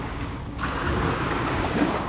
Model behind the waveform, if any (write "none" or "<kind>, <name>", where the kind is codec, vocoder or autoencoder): codec, DAC